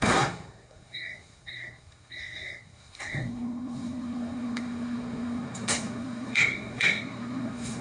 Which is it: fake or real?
fake